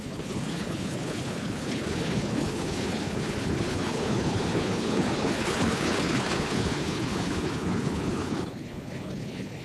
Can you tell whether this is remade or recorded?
remade